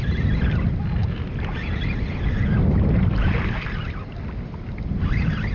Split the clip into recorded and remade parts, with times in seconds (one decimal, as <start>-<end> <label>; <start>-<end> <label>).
0.0-5.5 recorded